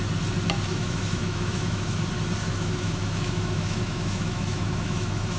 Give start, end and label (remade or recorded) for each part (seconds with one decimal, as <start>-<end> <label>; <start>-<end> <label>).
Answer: 0.0-0.7 recorded; 0.7-2.0 remade; 2.0-2.4 recorded; 2.4-5.4 remade

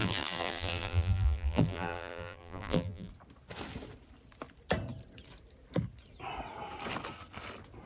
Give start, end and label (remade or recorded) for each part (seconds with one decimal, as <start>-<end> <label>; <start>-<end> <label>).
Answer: 0.0-3.1 remade; 3.1-7.9 recorded

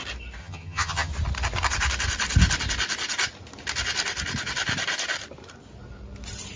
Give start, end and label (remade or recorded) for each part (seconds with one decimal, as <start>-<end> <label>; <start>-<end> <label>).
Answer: 0.0-0.4 recorded; 0.4-1.1 remade; 1.1-6.6 recorded

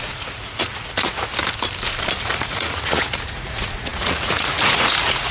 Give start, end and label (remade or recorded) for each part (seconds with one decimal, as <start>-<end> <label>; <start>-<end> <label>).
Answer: 0.0-1.3 remade; 1.3-2.2 recorded; 2.2-5.3 remade

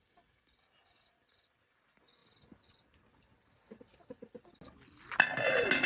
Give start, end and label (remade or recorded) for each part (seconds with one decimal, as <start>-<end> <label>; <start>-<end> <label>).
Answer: 0.0-5.9 recorded

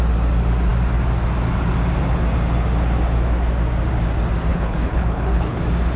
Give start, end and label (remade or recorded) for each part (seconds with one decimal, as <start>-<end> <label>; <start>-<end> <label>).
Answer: 0.0-4.5 recorded; 4.5-5.6 remade; 5.6-6.0 recorded

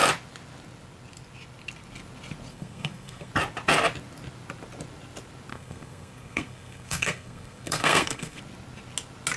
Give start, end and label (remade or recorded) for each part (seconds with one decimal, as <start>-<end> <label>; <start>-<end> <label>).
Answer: 0.0-2.5 recorded; 2.5-3.3 remade; 3.3-5.5 recorded; 5.5-8.4 remade; 8.4-9.4 recorded